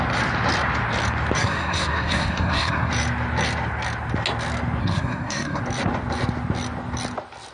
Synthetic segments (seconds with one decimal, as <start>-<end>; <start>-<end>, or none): 1.4-2.9; 4.8-5.6